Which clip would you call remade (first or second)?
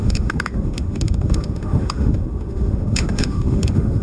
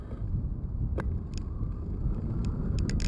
first